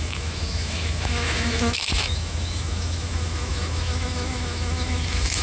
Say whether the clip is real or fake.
fake